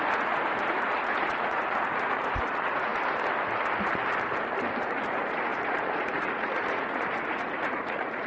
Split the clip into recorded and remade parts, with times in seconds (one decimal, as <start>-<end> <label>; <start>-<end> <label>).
0.0-2.9 remade; 2.9-4.8 recorded; 4.8-8.3 remade